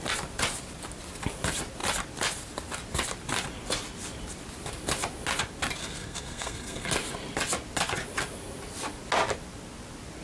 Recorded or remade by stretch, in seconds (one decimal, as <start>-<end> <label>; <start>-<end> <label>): 0.0-5.8 recorded; 5.8-6.9 remade; 6.9-10.2 recorded